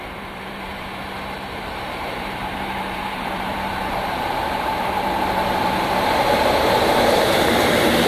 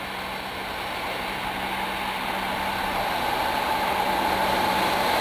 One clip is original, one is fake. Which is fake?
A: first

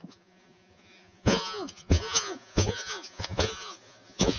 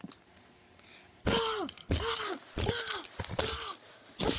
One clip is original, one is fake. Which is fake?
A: first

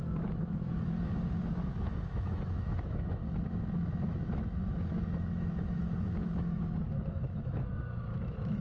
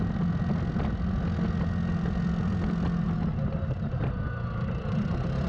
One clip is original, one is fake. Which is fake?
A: first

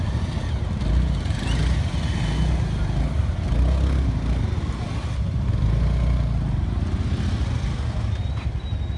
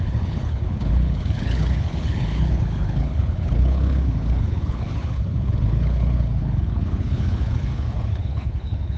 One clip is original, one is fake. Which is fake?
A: second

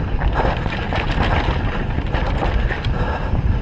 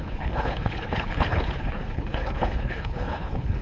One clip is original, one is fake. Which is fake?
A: second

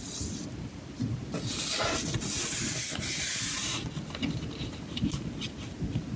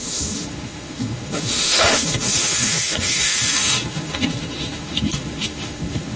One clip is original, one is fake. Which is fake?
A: second